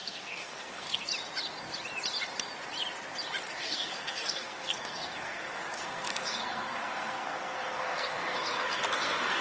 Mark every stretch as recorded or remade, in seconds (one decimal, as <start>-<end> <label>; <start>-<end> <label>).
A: 0.0-1.1 remade; 1.1-3.6 recorded; 3.6-9.4 remade